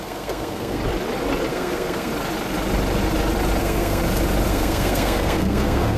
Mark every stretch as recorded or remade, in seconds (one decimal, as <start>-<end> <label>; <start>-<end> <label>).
0.0-0.8 remade; 0.8-1.5 recorded; 1.5-2.1 remade; 2.1-3.6 recorded; 3.6-4.0 remade; 4.0-4.5 recorded; 4.5-6.0 remade